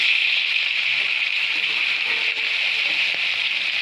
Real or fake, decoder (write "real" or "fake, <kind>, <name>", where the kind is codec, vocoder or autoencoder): real